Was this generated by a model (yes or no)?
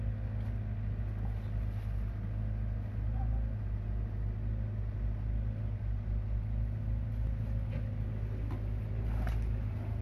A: no